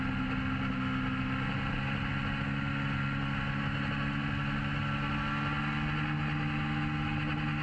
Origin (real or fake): real